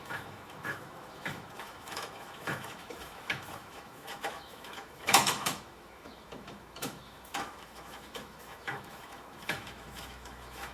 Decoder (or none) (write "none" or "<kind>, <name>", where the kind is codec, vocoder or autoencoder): autoencoder, DAC-VAE